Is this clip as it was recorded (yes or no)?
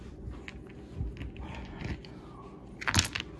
yes